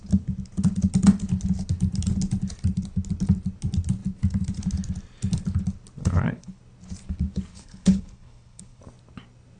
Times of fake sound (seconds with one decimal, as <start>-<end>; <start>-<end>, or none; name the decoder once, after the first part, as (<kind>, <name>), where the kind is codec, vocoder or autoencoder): 6.0-6.6 (codec, HILCodec); 7.5-8.8